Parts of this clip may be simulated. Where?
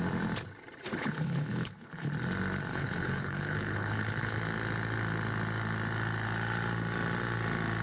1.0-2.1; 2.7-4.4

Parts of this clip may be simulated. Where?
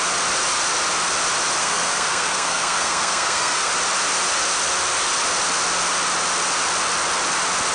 1.6-3.7